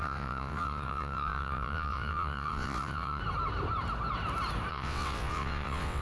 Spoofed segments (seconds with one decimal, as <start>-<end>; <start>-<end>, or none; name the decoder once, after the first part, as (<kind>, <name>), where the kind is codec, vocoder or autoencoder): 0.0-3.2 (vocoder, WaveNeXt); 4.7-6.0